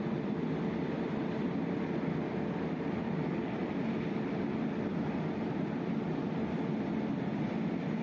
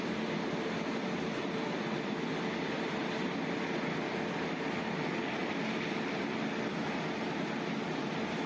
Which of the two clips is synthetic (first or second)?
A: first